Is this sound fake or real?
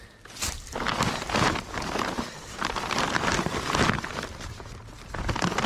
real